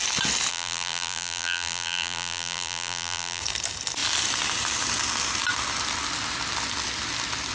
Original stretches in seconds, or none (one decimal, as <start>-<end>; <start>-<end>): 0.0-0.5; 3.4-7.5

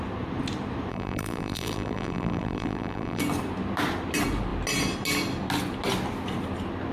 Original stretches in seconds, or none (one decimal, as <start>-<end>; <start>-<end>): 0.0-0.9; 3.2-6.9

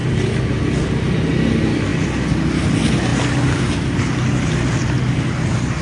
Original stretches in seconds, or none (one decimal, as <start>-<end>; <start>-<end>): 0.0-3.1